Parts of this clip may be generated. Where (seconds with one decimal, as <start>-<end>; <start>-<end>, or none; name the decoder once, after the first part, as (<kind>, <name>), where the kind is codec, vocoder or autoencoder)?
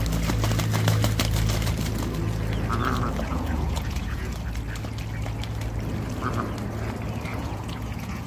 3.3-4.3 (vocoder, Vocos); 7.3-8.3